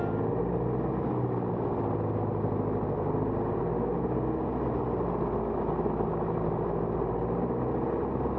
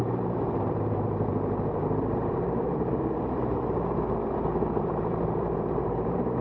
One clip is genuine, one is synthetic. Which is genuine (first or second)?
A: first